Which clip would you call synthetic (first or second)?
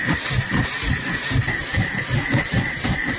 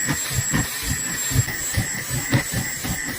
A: first